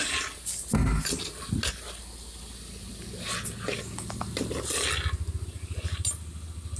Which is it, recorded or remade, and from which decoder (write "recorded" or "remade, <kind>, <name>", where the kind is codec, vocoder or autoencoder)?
recorded